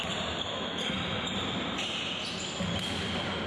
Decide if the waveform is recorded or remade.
recorded